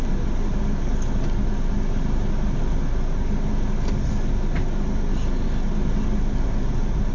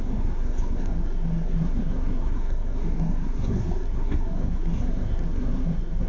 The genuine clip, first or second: first